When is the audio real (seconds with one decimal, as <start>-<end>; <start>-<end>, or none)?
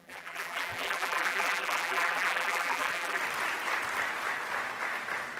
3.2-5.4